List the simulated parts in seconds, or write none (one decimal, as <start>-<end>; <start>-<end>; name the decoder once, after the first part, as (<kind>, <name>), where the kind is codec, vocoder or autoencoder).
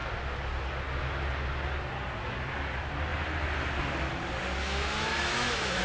4.6-5.8 (autoencoder, DAC-VAE)